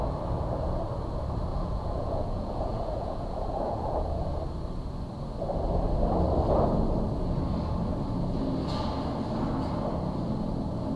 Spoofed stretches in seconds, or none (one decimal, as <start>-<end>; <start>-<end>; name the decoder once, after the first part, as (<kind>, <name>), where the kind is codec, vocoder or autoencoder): 1.5-4.3 (vocoder, Vocos)

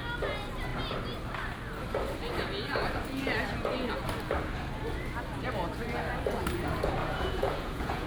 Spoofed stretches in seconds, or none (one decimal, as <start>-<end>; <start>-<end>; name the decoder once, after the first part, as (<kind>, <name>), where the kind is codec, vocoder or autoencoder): 7.0-8.1 (vocoder, Vocos)

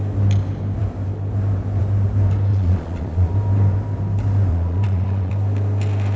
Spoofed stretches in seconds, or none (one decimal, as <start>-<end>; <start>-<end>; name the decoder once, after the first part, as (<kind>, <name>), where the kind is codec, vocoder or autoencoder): 2.5-3.3 (vocoder, Vocos); 4.5-5.3

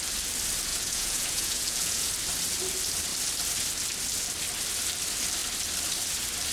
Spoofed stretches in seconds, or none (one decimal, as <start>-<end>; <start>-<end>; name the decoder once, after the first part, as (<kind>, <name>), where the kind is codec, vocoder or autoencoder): 0.7-2.1 (vocoder, Vocos)